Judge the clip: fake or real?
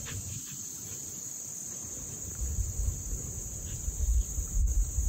fake